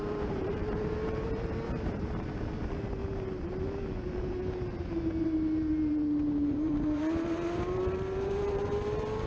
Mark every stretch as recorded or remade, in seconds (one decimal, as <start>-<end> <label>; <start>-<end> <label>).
0.0-3.0 remade; 3.0-5.2 recorded; 5.2-9.3 remade